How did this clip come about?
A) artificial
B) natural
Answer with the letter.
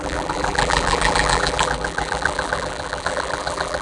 A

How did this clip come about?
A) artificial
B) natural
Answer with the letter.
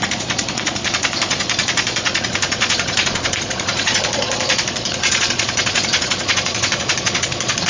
A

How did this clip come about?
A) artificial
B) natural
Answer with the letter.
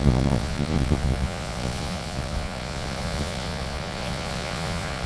A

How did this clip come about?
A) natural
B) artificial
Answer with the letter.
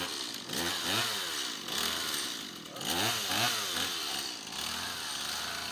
A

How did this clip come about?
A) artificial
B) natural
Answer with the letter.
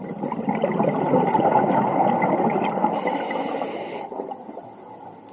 B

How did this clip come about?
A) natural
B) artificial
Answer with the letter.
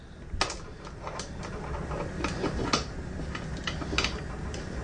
A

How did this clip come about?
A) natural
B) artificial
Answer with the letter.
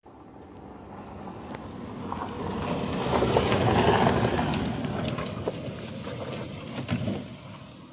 A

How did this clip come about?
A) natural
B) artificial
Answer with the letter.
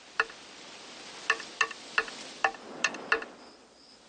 A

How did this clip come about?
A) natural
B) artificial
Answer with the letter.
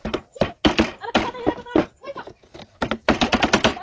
A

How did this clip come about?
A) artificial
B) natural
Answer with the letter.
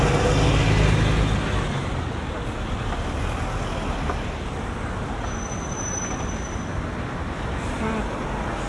B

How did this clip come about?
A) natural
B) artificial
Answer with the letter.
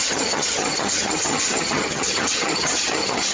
B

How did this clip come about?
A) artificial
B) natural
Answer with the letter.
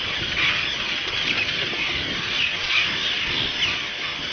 B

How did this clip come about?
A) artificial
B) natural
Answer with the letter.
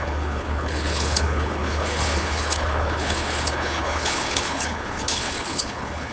A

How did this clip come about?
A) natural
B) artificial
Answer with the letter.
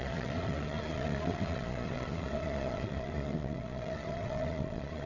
B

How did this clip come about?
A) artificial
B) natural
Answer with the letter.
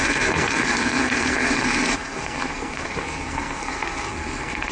A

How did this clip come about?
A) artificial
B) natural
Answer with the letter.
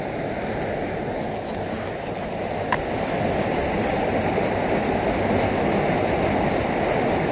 B